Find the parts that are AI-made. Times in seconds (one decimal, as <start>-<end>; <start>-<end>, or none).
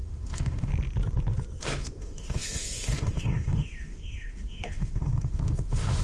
0.0-0.7; 1.6-6.0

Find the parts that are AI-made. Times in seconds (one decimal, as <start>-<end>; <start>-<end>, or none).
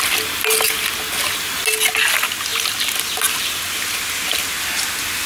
none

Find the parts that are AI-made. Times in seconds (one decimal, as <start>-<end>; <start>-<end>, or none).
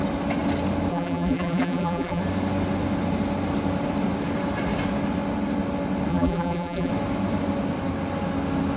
0.9-2.2; 6.1-6.9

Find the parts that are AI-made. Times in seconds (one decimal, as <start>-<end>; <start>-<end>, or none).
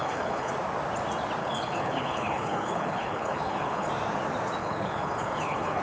0.0-0.5; 1.4-3.9; 4.6-5.8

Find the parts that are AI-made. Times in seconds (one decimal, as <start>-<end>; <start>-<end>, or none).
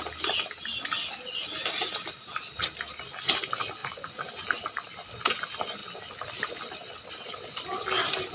3.8-4.3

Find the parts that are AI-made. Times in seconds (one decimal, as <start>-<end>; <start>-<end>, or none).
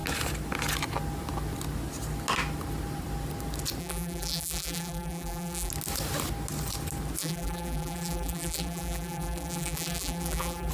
3.8-5.7; 7.2-10.7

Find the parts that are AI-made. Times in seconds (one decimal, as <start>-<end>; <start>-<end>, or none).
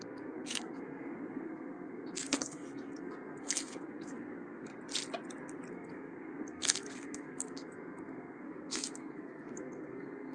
0.0-4.7; 5.7-10.3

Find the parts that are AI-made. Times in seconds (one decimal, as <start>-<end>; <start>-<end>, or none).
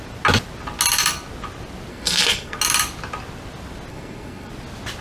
1.9-2.6; 3.9-4.5